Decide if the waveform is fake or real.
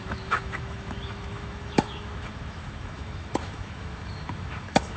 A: fake